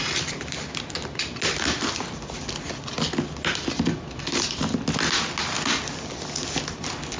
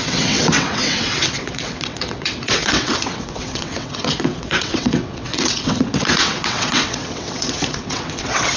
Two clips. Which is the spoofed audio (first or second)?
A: second